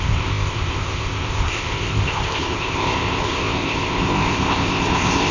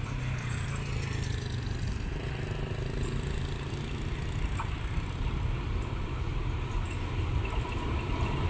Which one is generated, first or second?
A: first